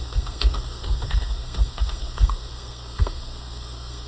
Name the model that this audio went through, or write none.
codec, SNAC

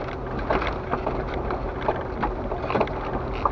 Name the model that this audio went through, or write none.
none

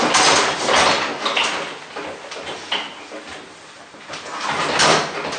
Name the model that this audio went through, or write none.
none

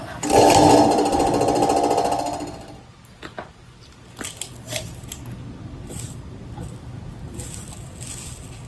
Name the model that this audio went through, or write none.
none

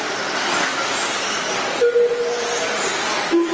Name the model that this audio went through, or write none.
none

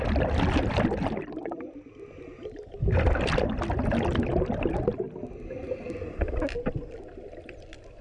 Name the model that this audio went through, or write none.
none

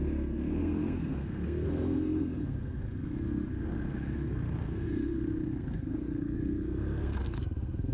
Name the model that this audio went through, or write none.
codec, SNAC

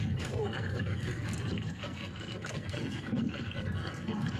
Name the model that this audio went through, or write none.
codec, SNAC